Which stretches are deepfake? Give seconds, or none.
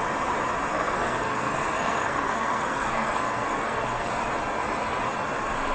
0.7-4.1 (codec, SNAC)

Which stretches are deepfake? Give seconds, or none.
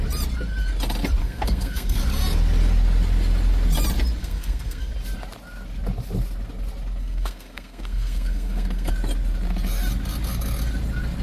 1.2-2.0 (codec, SNAC); 4.2-4.9; 7.0-8.9